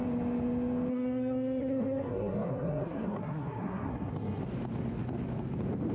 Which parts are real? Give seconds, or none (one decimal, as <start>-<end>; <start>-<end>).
0.0-0.9; 4.4-5.9